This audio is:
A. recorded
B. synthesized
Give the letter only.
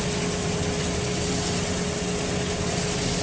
A